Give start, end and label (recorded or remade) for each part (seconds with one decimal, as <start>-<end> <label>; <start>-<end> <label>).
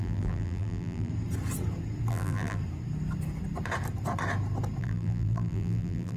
0.0-1.1 remade; 1.1-2.1 recorded; 2.1-2.6 remade; 2.6-4.8 recorded; 4.8-6.2 remade